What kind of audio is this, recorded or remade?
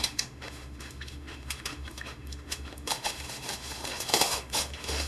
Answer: remade